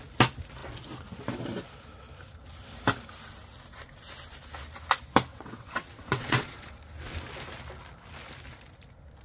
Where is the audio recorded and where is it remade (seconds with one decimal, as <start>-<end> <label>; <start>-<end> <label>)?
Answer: 0.0-5.3 recorded; 5.3-6.8 remade; 6.8-9.2 recorded